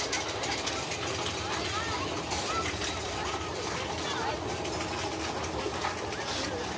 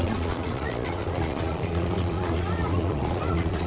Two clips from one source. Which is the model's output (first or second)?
second